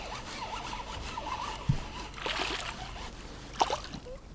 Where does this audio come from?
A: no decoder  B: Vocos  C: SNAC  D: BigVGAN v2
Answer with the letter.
A